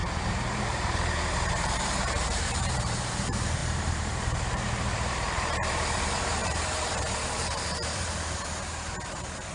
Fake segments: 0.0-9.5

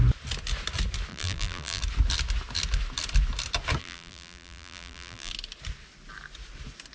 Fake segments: 1.1-1.8; 3.8-5.3

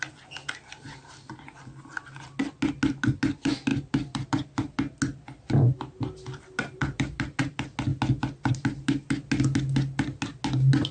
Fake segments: 3.7-4.3; 6.8-7.4

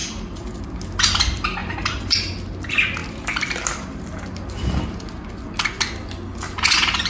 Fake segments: 1.6-2.1

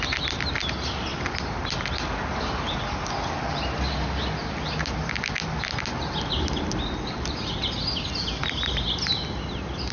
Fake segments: 8.4-9.0